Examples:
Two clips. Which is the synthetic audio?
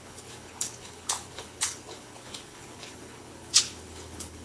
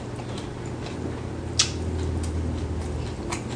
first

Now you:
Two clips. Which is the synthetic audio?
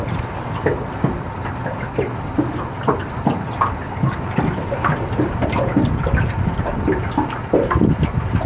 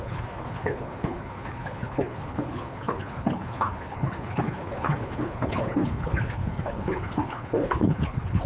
second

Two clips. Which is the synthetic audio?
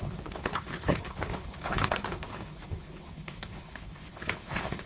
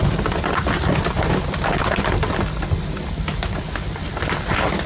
first